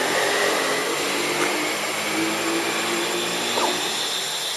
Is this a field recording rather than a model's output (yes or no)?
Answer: yes